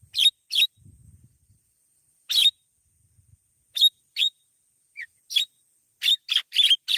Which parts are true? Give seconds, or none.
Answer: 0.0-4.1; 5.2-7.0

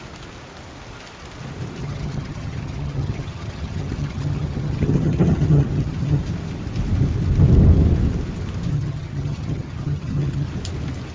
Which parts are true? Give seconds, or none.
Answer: 0.0-1.8; 6.2-8.7; 10.5-11.1

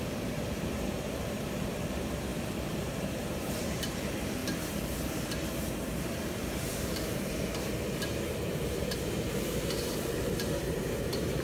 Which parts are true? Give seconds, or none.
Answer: 4.4-5.7

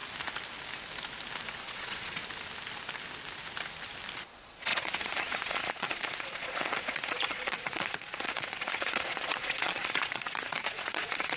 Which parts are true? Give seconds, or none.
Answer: 0.0-1.6; 2.2-4.3